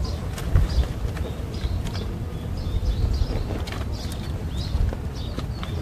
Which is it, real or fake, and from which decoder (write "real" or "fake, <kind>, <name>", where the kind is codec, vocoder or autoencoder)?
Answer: real